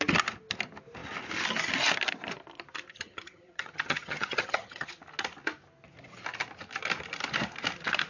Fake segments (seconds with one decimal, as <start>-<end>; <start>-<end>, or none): 2.9-4.9

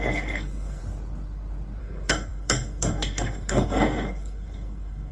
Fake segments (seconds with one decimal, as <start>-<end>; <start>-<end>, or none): 0.0-0.8; 1.8-5.1

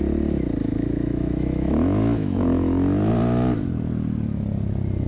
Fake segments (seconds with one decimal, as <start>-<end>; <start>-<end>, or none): 0.6-3.1